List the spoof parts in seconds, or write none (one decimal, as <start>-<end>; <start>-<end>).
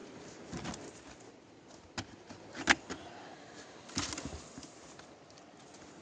none